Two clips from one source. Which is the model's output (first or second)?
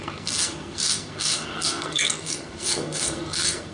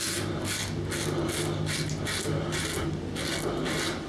first